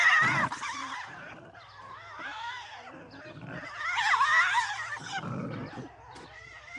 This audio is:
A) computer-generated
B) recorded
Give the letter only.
B